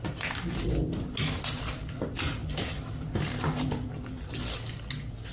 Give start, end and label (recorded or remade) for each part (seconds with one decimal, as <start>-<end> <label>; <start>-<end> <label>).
0.0-5.3 recorded